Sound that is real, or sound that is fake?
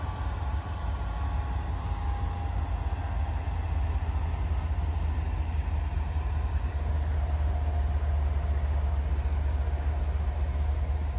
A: real